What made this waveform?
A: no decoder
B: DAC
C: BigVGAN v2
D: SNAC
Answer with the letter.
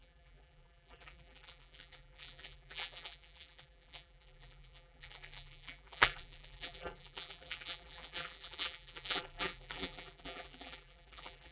C